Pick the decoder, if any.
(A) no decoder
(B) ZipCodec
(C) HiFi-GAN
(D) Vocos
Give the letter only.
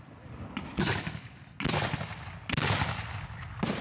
A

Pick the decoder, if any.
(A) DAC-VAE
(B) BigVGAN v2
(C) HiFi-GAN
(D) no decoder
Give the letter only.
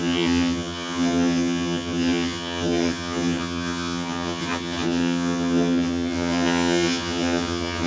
C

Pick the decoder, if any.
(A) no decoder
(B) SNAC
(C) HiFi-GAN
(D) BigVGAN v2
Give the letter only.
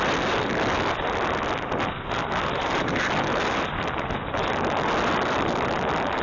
A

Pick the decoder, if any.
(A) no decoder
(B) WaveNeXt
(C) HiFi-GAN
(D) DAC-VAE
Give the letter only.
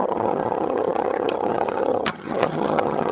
C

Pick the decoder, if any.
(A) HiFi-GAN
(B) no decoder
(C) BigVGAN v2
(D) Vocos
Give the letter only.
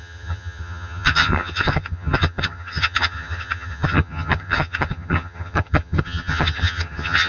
A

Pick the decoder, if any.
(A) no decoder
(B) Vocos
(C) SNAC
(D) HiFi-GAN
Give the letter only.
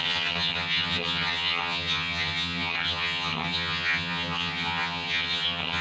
D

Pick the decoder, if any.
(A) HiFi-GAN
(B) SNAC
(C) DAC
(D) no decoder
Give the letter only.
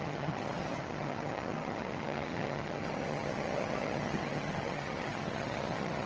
A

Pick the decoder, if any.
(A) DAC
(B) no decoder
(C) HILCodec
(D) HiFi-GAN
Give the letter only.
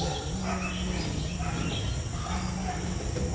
B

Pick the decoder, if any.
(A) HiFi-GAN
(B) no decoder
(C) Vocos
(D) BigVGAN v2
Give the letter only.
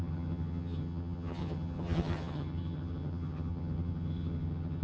A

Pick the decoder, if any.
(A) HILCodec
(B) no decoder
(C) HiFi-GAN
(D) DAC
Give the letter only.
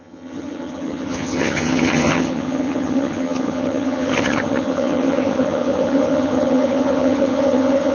C